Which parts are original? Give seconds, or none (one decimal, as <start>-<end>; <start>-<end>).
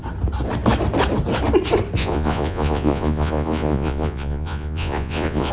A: 0.0-2.0